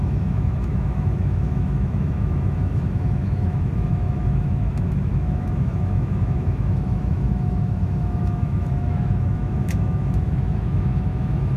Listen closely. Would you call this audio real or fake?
fake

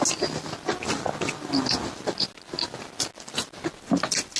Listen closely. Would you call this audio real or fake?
real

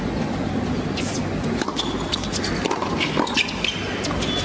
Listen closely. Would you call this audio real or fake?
real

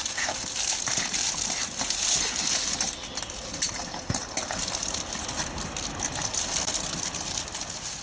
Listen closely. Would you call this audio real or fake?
real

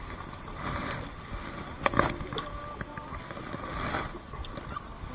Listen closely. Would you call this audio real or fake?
real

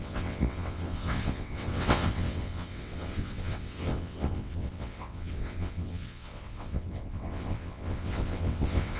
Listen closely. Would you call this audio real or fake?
fake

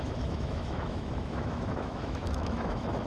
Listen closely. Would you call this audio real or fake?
fake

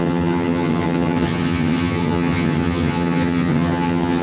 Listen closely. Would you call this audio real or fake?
fake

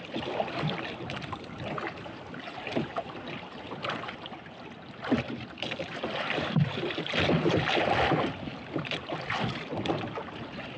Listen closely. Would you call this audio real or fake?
fake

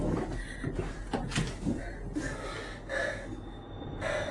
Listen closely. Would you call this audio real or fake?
real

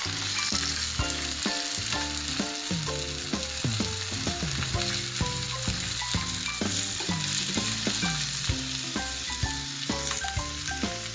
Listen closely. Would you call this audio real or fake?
real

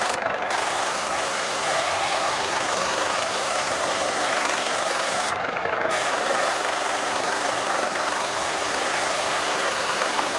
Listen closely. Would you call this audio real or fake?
fake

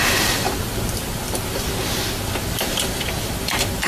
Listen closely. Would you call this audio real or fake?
fake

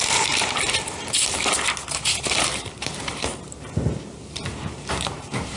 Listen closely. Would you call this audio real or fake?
fake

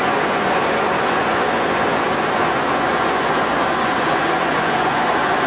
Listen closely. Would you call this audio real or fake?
fake